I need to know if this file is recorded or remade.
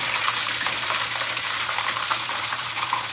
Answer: remade